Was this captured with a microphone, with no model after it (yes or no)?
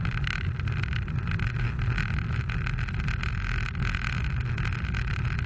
yes